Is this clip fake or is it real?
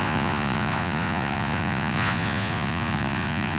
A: fake